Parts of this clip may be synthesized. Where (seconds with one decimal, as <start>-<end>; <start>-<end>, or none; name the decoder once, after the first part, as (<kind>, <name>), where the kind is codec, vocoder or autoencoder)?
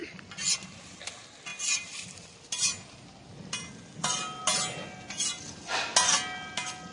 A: none